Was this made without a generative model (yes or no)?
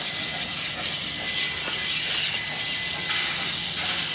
yes